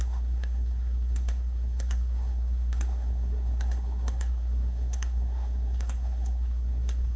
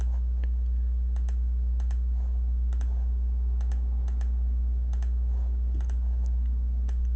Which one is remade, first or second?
first